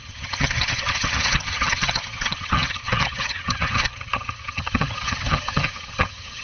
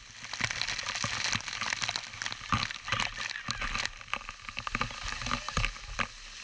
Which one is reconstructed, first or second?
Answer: first